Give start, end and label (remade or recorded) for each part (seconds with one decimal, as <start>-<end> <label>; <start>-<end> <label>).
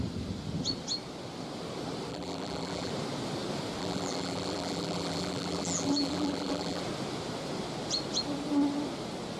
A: 0.0-2.1 recorded; 2.1-2.9 remade; 2.9-3.8 recorded; 3.8-6.8 remade; 6.8-9.4 recorded